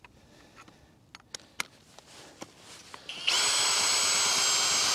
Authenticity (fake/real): real